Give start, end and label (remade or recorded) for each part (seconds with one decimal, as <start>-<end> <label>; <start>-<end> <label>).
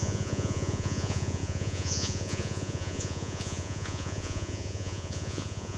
0.0-5.8 remade